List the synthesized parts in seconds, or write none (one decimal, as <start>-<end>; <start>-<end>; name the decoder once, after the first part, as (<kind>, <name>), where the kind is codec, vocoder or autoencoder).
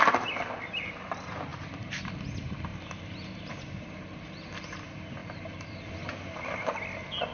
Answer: 1.5-2.1 (vocoder, BigVGAN v2); 5.2-5.9